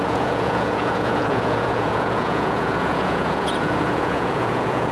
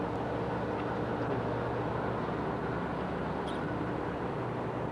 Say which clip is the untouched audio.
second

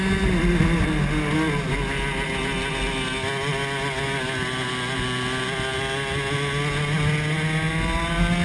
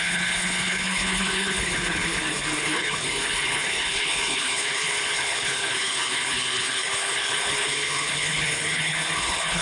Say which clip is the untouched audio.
first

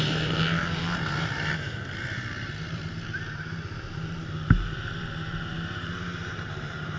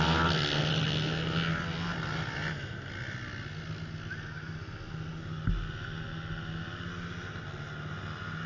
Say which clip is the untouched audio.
second